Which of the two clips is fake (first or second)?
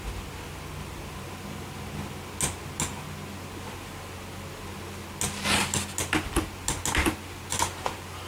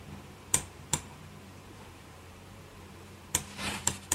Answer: second